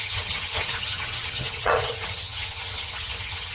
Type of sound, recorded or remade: remade